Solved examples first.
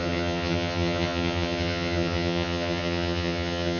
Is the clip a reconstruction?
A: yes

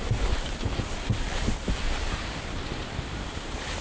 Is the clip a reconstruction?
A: no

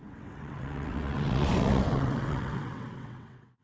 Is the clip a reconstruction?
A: yes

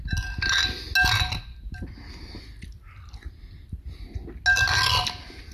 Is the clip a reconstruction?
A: no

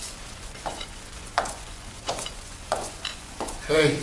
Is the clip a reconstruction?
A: yes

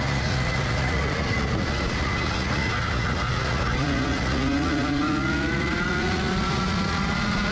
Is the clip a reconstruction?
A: yes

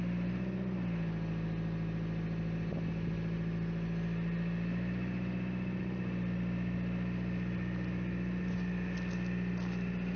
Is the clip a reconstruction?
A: no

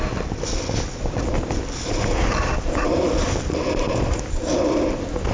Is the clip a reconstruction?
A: no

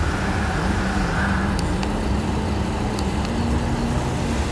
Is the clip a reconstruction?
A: no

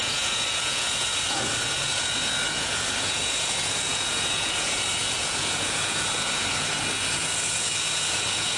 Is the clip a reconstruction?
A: yes